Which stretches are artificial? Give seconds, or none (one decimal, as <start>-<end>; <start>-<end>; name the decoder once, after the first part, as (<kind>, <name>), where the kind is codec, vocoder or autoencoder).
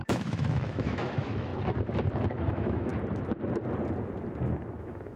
0.0-1.5 (autoencoder, DAC-VAE); 2.5-2.9; 4.8-5.2